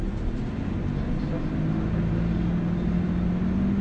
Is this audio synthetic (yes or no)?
no